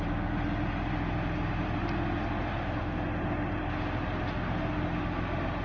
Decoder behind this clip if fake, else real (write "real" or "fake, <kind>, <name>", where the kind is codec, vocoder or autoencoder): real